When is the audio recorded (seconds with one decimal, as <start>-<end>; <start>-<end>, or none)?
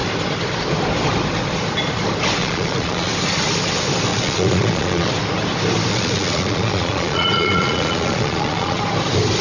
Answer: 0.0-2.4; 3.1-4.1; 5.1-5.9; 8.8-9.4